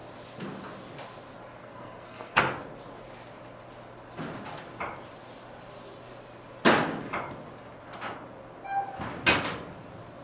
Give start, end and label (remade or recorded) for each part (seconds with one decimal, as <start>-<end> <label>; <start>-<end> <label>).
0.0-1.6 recorded; 1.6-2.4 remade; 2.4-10.2 recorded